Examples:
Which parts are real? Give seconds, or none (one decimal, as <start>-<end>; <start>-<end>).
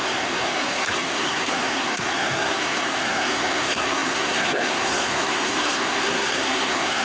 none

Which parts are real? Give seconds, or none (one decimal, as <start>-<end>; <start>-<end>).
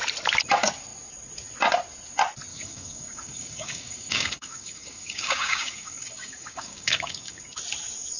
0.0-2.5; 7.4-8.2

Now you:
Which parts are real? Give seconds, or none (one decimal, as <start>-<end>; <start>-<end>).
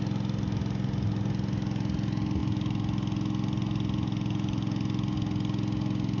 0.0-6.2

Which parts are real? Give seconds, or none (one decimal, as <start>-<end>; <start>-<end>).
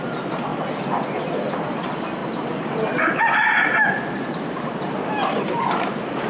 0.0-6.3